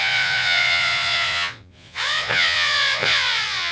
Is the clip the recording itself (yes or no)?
no